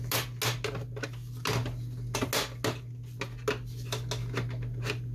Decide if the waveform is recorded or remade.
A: recorded